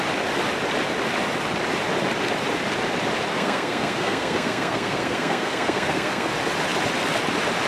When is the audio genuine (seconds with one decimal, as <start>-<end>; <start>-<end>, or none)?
0.0-3.3; 6.3-7.7